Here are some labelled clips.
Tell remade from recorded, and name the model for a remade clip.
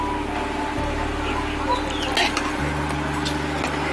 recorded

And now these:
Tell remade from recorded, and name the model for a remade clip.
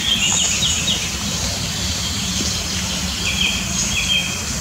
recorded